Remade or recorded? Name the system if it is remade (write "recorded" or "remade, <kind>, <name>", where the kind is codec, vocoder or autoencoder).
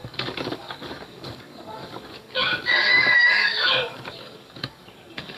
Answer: remade, codec, DAC